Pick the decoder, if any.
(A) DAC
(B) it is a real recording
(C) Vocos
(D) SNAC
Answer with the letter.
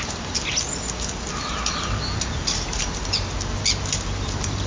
B